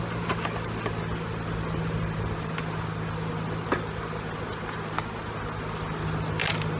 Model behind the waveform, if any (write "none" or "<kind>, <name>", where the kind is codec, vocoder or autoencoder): none